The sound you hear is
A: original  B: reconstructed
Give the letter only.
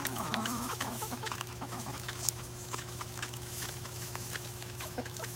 B